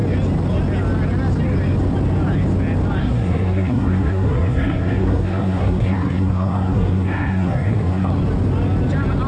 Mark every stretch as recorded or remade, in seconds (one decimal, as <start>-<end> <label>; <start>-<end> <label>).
0.0-3.0 recorded; 3.0-8.1 remade; 8.1-9.3 recorded